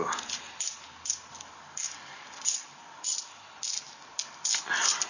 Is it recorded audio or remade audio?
recorded